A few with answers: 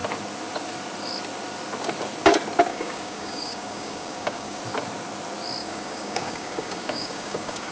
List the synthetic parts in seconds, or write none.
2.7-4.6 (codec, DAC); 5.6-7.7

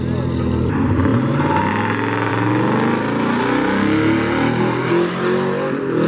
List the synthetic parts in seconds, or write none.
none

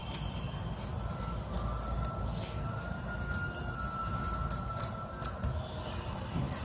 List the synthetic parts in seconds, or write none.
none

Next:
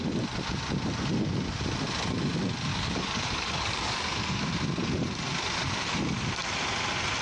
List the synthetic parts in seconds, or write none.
2.7-4.5 (codec, DAC)

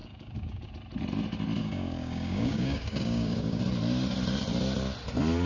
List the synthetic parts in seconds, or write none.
0.0-0.7 (codec, DAC); 1.6-3.6

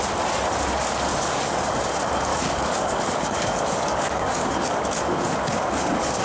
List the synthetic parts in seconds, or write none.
1.1-1.6 (codec, DAC); 2.3-6.2

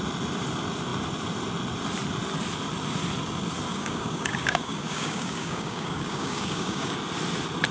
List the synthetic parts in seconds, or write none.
3.7-6.9 (codec, DAC)